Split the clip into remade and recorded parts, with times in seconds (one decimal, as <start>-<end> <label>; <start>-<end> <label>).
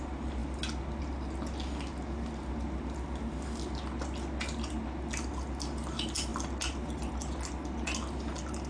0.0-8.7 recorded